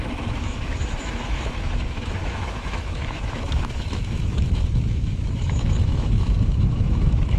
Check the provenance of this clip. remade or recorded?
remade